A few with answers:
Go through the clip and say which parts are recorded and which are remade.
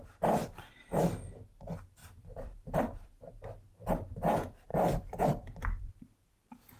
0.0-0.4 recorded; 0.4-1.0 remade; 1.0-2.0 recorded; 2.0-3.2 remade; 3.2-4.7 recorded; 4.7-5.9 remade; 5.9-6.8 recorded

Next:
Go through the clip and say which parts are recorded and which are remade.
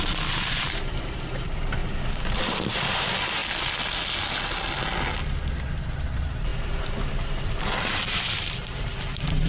0.0-1.8 remade; 1.8-2.4 recorded; 2.4-3.4 remade; 3.4-5.6 recorded; 5.6-9.5 remade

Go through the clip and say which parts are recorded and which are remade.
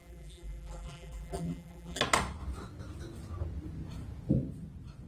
0.0-2.0 remade; 2.0-5.1 recorded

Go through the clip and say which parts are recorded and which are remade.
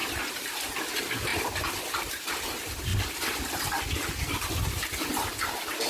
0.0-0.8 remade; 0.8-5.9 recorded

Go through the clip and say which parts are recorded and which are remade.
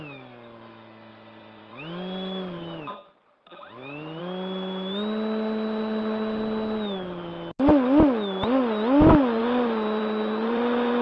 0.0-1.1 recorded; 1.1-4.2 remade; 4.2-9.4 recorded; 9.4-11.0 remade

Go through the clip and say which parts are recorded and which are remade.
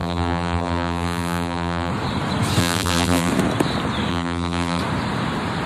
0.0-1.9 remade; 1.9-2.6 recorded; 2.6-3.3 remade; 3.3-4.1 recorded; 4.1-4.8 remade; 4.8-5.7 recorded